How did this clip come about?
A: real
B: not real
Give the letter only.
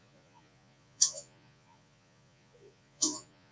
B